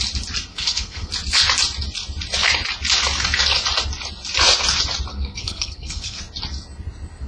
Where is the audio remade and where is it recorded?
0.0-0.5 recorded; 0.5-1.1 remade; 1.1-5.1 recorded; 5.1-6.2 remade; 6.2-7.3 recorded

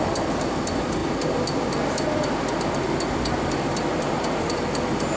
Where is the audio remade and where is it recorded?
0.0-5.2 recorded

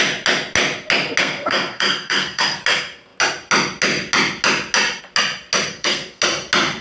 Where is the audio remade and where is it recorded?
0.0-1.2 recorded; 1.2-2.6 remade; 2.6-5.7 recorded; 5.7-6.2 remade; 6.2-6.8 recorded

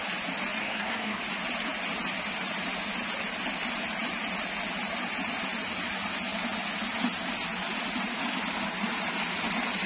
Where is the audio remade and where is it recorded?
0.0-0.6 recorded; 0.6-1.2 remade; 1.2-9.9 recorded

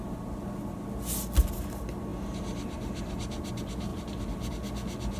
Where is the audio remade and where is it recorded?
0.0-5.2 recorded

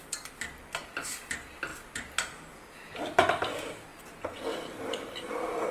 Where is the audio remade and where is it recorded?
0.0-5.7 recorded